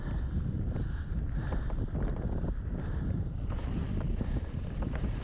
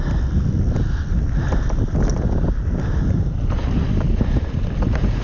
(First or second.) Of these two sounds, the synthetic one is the first